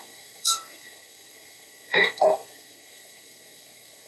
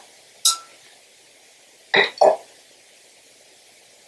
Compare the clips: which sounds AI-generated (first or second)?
first